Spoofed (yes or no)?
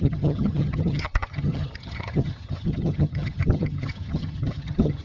yes